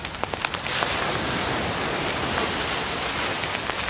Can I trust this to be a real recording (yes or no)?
yes